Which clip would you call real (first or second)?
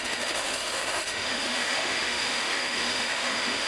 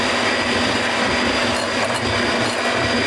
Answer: second